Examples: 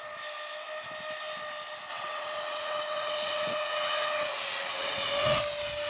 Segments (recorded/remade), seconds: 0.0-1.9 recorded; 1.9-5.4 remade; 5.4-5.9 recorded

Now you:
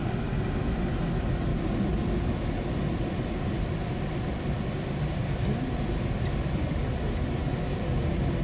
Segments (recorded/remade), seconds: 0.0-8.4 recorded

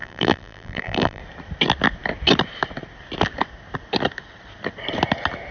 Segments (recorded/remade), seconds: 0.0-1.2 remade; 1.2-5.5 recorded

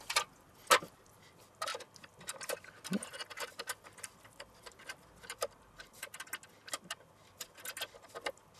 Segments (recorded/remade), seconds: 0.0-8.6 recorded

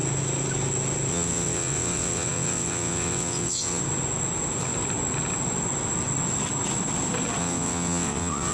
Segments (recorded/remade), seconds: 0.0-1.1 recorded; 1.1-3.8 remade; 3.8-7.4 recorded; 7.4-8.5 remade

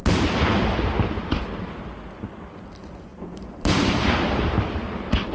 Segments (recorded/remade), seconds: 0.0-3.1 recorded; 3.1-4.4 remade; 4.4-5.3 recorded

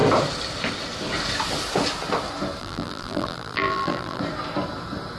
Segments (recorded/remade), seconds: 0.0-2.6 recorded; 2.6-4.2 remade; 4.2-5.2 recorded